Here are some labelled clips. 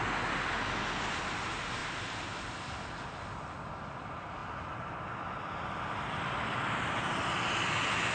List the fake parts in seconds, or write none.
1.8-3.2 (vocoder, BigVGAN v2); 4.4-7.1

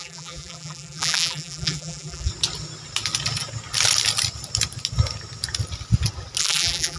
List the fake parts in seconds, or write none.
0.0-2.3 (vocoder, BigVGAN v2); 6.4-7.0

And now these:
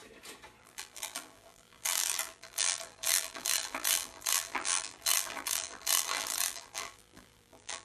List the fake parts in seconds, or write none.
0.6-7.8 (vocoder, BigVGAN v2)

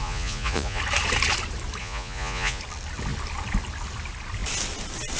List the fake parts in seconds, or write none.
0.0-0.8 (vocoder, Vocos); 1.8-2.6

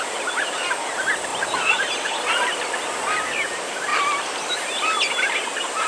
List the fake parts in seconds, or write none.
1.3-1.9 (vocoder, BigVGAN v2)

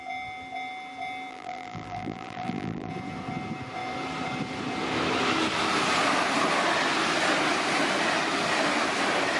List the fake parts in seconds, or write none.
1.3-2.9 (vocoder, BigVGAN v2)

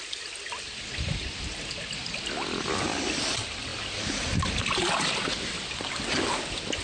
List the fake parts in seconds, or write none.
none